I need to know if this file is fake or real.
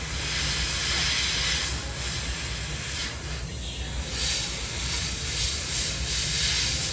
real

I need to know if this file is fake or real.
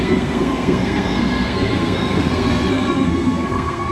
fake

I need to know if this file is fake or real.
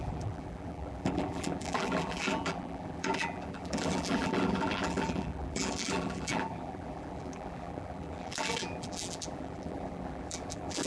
fake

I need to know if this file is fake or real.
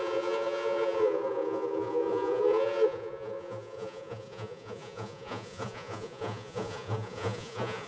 fake